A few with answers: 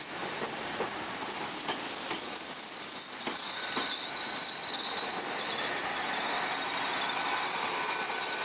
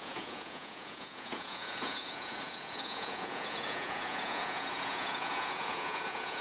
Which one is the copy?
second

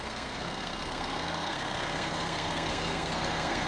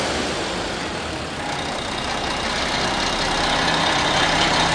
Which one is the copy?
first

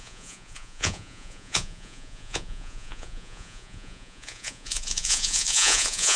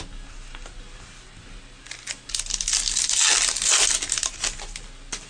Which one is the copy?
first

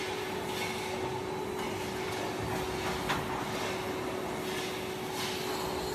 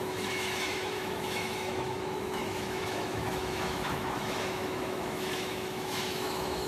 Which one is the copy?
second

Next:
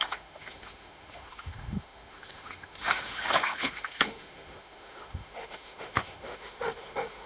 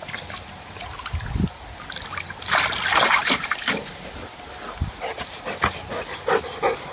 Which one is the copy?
first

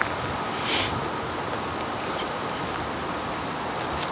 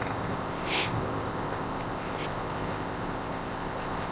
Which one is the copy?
second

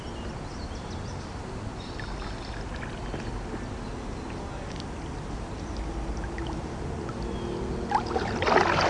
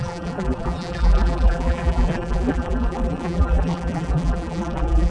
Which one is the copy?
second